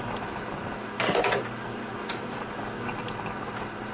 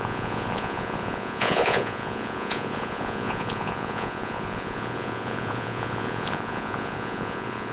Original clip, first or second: first